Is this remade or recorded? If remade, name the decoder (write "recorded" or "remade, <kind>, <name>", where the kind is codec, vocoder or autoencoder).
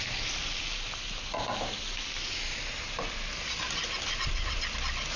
recorded